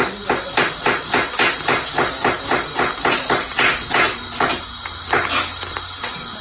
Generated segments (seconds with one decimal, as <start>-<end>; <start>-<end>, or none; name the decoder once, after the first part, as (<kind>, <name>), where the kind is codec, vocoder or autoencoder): none